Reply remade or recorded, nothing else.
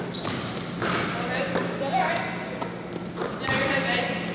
recorded